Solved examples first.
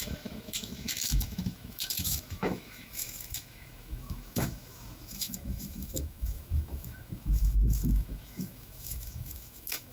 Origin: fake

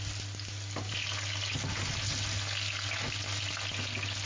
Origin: real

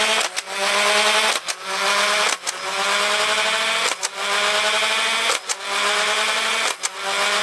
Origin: real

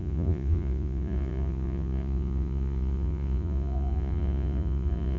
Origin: fake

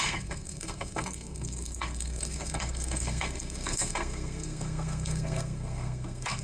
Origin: fake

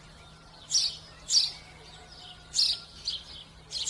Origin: real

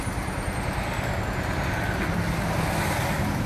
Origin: real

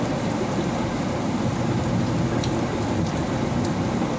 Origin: real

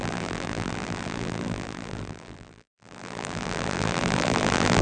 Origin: fake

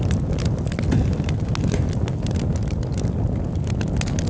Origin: real